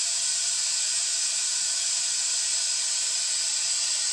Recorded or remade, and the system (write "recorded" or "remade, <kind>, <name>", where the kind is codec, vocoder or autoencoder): recorded